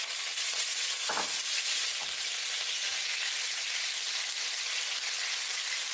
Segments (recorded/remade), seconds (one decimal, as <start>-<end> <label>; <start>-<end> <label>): 0.0-0.5 recorded; 0.5-1.1 remade; 1.1-5.9 recorded

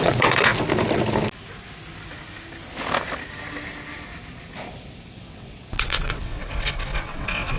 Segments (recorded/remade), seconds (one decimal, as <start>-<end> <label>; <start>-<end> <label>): 0.0-0.5 remade; 0.5-5.1 recorded; 5.1-7.6 remade